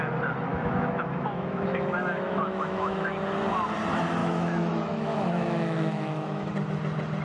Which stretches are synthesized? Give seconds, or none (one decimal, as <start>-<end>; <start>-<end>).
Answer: 0.5-3.1; 4.2-6.5